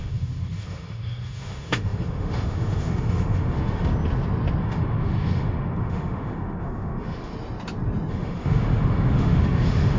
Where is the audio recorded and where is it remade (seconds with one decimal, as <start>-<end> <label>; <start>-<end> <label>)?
0.0-3.9 remade; 3.9-4.6 recorded; 4.6-7.3 remade; 7.3-8.1 recorded; 8.1-10.0 remade